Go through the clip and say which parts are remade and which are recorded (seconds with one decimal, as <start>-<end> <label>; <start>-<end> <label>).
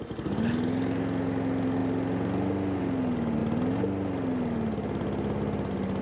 0.0-6.0 recorded